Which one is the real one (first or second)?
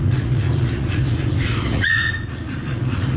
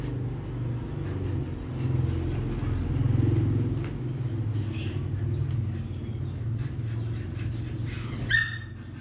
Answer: second